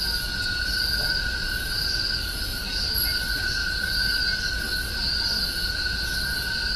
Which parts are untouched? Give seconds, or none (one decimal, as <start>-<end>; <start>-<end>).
0.0-2.5; 3.1-3.6; 4.2-5.0; 6.0-6.8